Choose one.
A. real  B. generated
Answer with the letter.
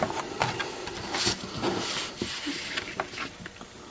A